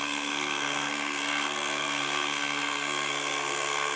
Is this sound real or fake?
fake